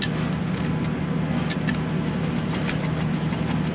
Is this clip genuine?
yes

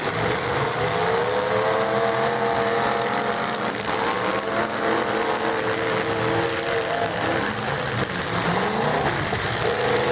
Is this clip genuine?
yes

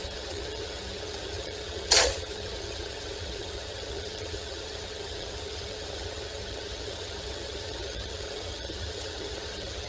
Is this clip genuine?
no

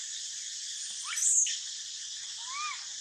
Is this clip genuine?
yes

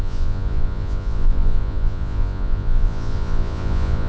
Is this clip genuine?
no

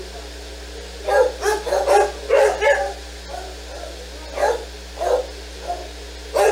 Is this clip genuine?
yes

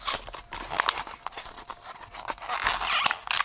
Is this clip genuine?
yes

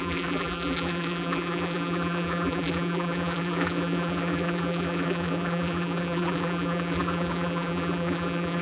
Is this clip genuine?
no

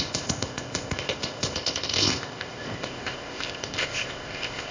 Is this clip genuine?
no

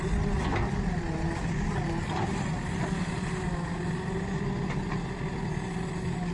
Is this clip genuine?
yes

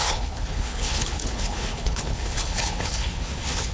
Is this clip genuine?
no